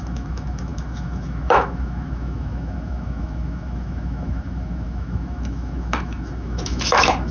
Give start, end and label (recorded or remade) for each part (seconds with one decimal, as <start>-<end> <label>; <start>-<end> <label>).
0.0-7.3 remade